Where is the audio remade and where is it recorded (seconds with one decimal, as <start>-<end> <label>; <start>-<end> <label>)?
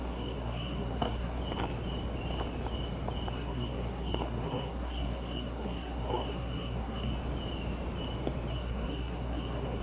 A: 0.0-1.4 remade; 1.4-3.3 recorded; 3.3-7.1 remade; 7.1-8.5 recorded; 8.5-9.8 remade